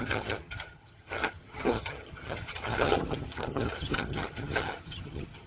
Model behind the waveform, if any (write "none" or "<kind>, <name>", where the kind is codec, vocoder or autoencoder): vocoder, HiFi-GAN